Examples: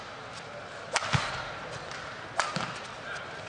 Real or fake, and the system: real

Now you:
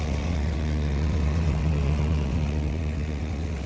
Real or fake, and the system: fake, vocoder, WaveNeXt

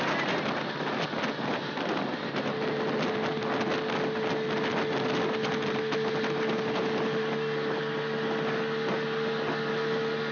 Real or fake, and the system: real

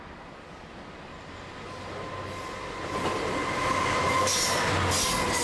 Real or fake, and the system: real